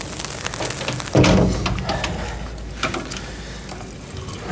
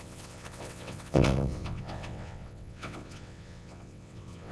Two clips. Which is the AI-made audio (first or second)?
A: second